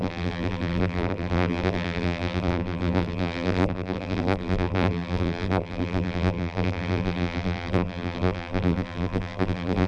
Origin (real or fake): fake